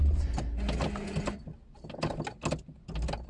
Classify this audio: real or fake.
real